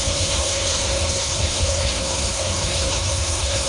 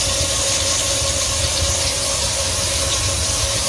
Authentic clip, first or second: second